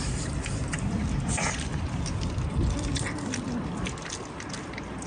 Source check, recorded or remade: recorded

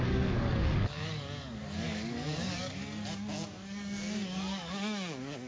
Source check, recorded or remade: remade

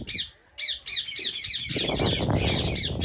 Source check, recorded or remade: recorded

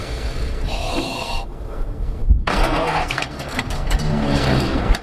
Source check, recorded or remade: remade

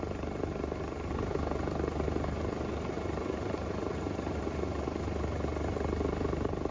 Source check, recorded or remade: recorded